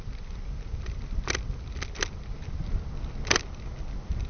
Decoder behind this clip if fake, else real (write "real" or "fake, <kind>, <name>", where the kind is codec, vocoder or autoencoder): real